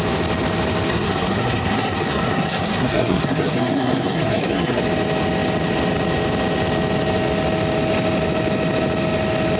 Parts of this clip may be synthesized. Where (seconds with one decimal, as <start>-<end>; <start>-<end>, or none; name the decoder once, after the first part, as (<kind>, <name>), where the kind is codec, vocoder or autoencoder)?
0.9-4.8 (codec, SNAC)